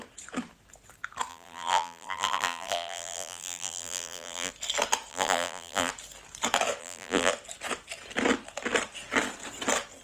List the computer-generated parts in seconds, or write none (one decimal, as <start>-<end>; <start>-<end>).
1.3-4.5; 5.1-5.9; 6.8-7.3